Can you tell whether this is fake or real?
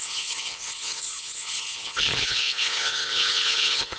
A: fake